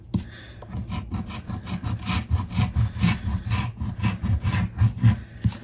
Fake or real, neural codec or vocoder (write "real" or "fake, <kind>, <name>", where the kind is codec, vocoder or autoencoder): real